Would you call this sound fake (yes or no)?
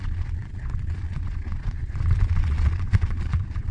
yes